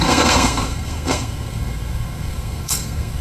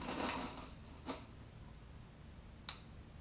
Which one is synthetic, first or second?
first